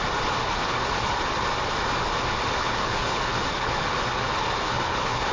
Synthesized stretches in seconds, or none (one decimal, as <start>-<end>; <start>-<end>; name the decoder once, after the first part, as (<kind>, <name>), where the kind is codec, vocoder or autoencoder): 0.4-1.1 (codec, HILCodec); 2.6-5.3